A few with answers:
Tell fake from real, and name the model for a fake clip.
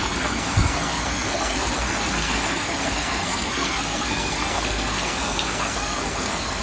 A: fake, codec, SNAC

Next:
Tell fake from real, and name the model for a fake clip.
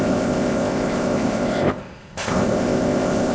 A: fake, codec, ZipCodec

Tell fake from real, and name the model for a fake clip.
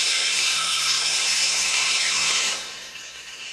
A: fake, codec, SNAC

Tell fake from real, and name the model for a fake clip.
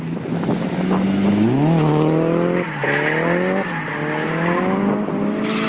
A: real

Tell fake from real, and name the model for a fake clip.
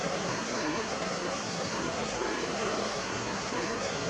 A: fake, codec, SNAC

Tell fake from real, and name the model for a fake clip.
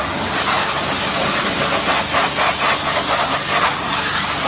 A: real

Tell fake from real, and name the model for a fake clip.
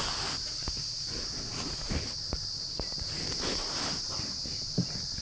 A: real